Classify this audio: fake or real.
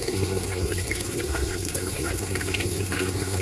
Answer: fake